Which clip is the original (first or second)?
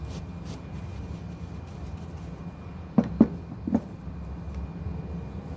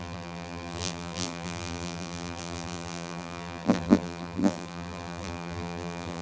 first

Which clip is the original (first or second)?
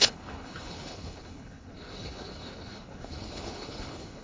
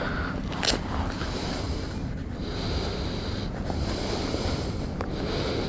second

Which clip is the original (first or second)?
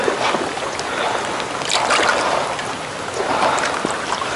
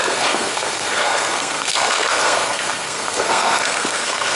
first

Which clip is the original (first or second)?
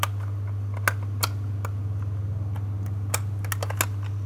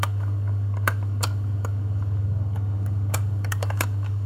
first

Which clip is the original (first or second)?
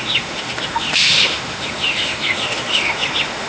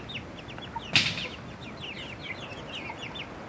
second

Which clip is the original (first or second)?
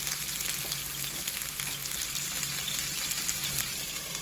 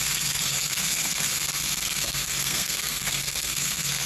first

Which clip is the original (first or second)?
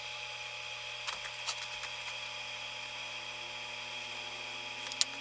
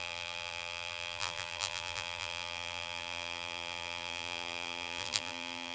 first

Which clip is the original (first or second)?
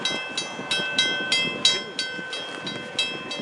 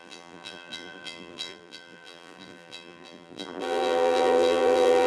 first